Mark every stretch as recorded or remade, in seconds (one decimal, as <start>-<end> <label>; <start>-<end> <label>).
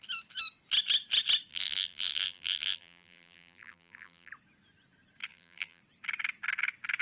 0.0-1.5 recorded; 1.5-4.3 remade; 4.3-5.3 recorded; 5.3-5.8 remade; 5.8-7.0 recorded